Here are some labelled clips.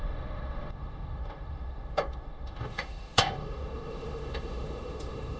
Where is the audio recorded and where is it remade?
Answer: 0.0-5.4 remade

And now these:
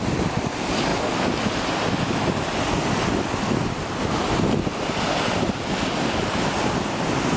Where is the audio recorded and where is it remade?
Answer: 0.0-7.4 recorded

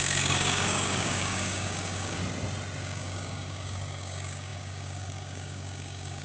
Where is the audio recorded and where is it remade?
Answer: 0.0-2.2 remade; 2.2-2.8 recorded; 2.8-6.2 remade

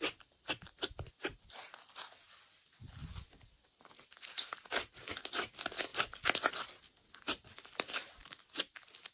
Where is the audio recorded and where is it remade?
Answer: 0.0-9.1 recorded

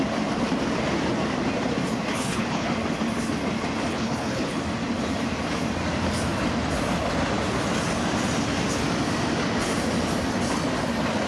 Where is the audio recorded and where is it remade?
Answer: 0.0-2.1 recorded; 2.1-2.7 remade; 2.7-3.9 recorded; 3.9-4.6 remade; 4.6-11.3 recorded

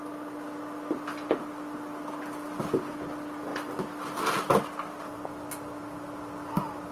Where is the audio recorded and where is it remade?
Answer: 0.0-6.9 recorded

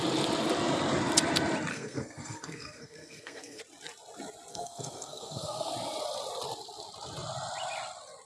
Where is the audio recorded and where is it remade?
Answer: 0.0-1.7 recorded; 1.7-3.6 remade; 3.6-4.5 recorded; 4.5-5.7 remade; 5.7-8.3 recorded